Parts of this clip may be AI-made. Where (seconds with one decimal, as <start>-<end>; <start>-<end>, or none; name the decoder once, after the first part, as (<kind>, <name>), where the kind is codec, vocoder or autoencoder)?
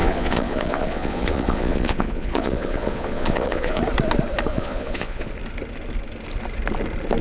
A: 0.0-3.8 (vocoder, Vocos); 4.5-5.3